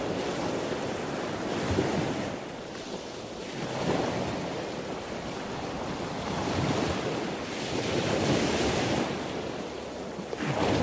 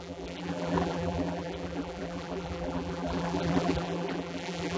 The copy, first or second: second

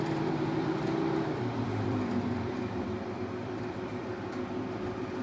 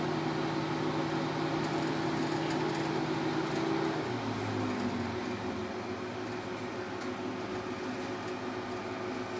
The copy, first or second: first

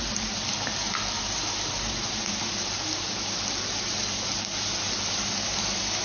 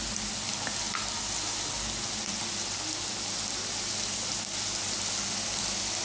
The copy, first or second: first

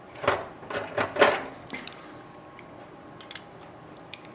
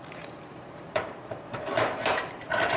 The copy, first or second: second